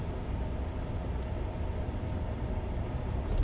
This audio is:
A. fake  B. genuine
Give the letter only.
B